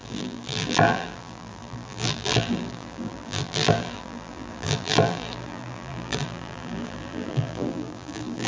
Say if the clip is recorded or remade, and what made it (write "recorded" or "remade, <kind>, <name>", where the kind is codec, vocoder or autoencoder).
remade, vocoder, BigVGAN v2